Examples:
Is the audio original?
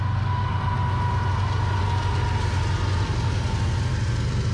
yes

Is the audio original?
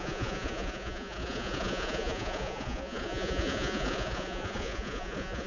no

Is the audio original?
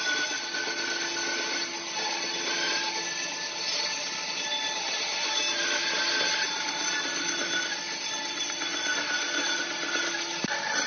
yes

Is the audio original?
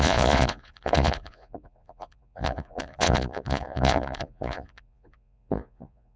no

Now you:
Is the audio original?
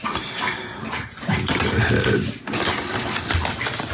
yes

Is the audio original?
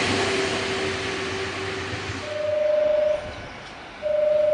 yes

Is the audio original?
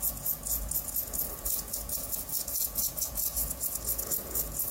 no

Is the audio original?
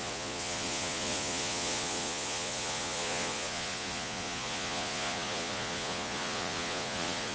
no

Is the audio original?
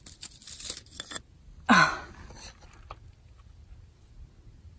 yes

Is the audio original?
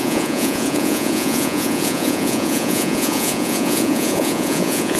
no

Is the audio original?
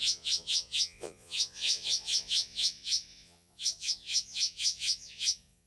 no